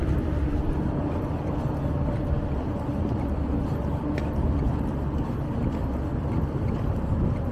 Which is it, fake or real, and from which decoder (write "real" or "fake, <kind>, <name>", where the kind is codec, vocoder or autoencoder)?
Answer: real